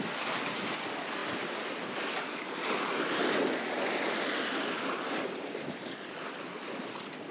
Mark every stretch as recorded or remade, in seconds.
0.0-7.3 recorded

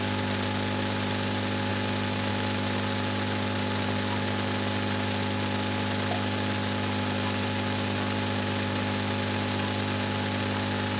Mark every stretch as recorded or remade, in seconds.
0.0-11.0 recorded

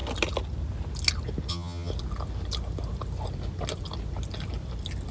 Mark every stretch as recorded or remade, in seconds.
0.0-1.5 recorded; 1.5-1.9 remade; 1.9-5.1 recorded

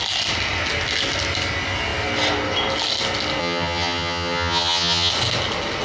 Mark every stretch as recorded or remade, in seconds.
0.0-3.4 recorded; 3.4-5.1 remade; 5.1-5.8 recorded